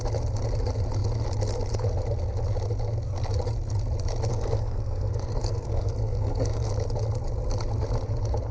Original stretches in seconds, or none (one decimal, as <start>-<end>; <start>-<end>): 0.0-4.3; 6.7-8.5